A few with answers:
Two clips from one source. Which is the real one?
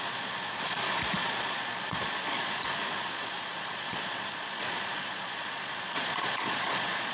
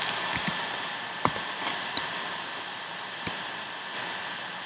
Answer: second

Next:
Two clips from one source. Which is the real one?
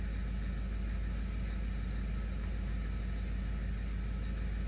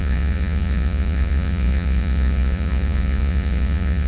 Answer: first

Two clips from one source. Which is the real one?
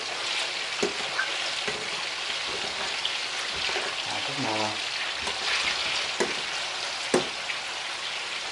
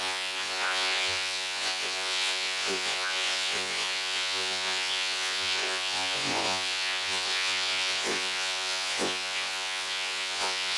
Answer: first